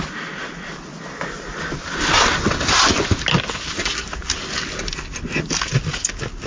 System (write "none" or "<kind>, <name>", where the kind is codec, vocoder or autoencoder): none